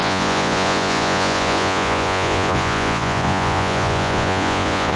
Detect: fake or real fake